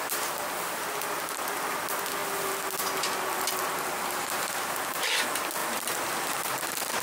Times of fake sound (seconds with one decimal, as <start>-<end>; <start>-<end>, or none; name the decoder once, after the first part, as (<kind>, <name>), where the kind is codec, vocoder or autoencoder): none

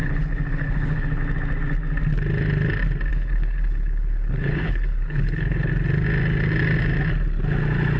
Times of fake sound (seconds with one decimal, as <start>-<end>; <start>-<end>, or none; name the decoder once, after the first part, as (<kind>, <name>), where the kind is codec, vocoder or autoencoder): 0.0-1.2 (codec, HILCodec); 3.1-5.7

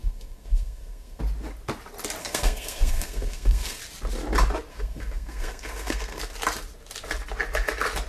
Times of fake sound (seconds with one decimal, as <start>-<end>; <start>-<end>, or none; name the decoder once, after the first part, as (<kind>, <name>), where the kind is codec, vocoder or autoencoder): 0.0-1.2 (codec, SNAC); 2.2-3.8; 4.7-6.2

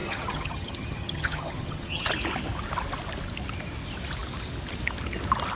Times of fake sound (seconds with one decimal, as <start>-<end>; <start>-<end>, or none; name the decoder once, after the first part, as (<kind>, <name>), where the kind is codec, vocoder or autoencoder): 0.0-2.1 (vocoder, HiFi-GAN)

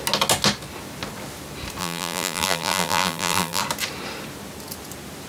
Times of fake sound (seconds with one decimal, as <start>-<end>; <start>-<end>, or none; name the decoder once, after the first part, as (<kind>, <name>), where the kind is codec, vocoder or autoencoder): 1.8-3.6 (vocoder, BigVGAN v2)